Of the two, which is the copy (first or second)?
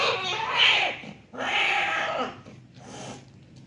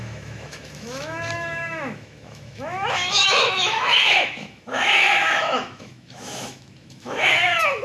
second